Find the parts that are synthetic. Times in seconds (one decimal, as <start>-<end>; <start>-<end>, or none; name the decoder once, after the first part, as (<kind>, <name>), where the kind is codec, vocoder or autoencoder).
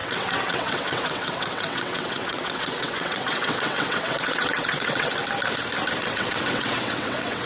0.0-5.1 (vocoder, WaveNeXt); 6.0-7.5